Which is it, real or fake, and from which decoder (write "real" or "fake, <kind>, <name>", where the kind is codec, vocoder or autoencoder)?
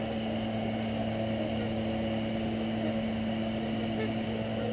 real